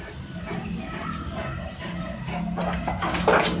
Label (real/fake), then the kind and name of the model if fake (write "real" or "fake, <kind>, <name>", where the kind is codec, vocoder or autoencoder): real